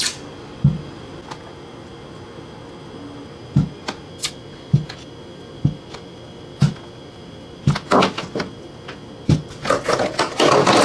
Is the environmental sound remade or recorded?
recorded